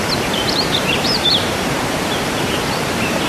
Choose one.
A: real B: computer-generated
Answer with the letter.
B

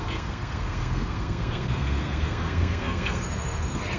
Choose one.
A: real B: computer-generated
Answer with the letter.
B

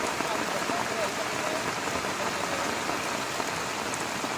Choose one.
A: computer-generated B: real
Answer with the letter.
B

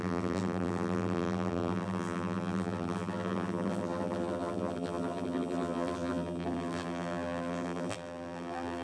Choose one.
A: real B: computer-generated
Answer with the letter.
B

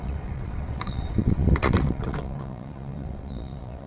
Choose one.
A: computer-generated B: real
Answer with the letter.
A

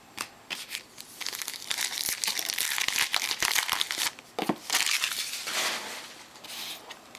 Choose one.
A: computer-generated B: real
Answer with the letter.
B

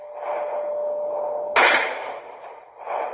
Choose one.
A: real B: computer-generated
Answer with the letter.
A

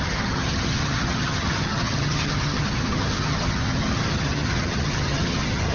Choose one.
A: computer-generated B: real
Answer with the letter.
A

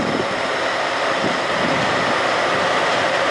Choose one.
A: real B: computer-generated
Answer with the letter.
A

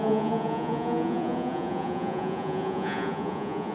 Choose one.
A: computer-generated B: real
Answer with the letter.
A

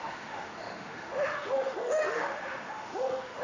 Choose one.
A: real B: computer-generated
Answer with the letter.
B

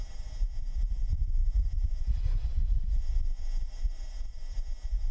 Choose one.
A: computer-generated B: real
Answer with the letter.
A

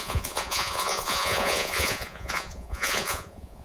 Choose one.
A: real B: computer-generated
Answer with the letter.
B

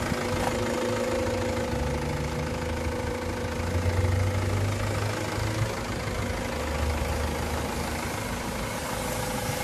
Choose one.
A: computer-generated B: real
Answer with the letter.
B